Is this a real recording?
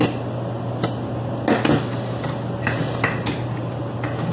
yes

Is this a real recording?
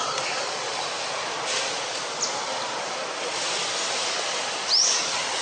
yes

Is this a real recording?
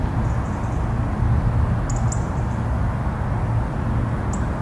yes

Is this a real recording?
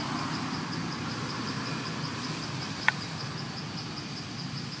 yes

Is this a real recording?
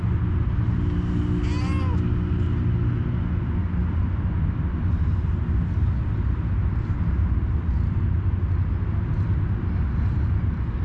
yes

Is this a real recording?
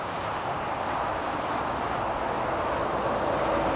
yes